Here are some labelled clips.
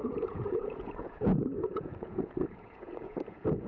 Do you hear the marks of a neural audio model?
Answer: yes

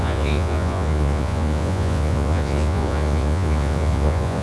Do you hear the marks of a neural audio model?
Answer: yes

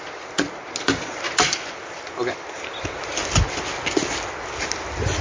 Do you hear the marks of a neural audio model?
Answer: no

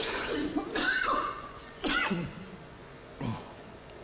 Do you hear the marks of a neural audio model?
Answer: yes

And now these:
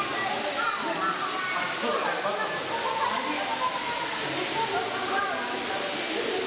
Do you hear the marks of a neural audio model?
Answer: no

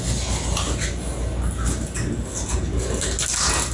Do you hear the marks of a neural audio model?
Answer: no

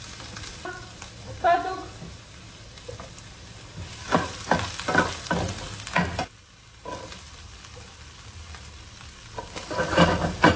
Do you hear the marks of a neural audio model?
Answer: no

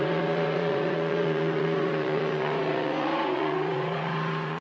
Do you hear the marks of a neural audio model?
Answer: yes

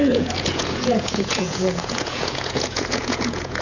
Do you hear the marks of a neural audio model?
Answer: yes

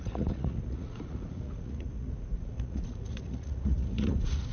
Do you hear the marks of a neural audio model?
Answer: yes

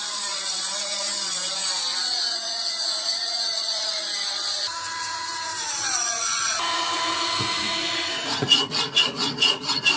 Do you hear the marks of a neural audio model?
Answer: yes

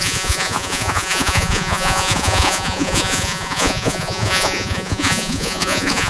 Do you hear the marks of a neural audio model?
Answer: yes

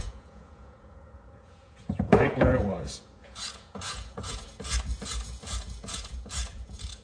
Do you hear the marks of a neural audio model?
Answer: yes